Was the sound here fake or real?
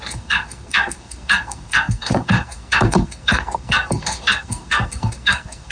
fake